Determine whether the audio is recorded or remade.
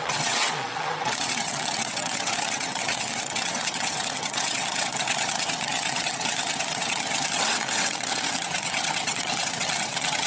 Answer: remade